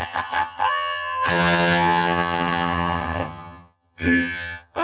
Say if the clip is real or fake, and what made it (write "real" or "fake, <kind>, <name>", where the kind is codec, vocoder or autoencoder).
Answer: fake, vocoder, HiFi-GAN